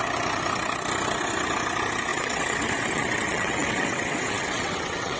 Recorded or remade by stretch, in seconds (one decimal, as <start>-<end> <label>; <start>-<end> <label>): 0.0-2.1 recorded; 2.1-5.2 remade